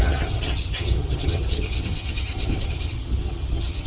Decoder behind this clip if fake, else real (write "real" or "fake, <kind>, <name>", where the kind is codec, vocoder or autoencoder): fake, vocoder, HiFi-GAN